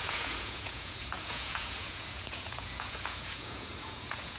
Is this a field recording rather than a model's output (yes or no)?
no